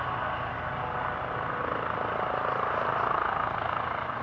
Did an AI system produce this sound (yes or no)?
no